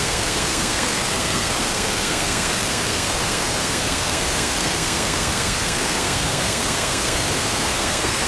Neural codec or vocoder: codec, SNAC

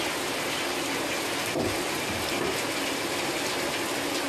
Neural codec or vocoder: none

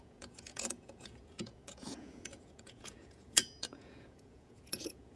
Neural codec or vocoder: vocoder, Vocos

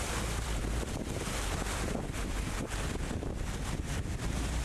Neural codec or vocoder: vocoder, BigVGAN v2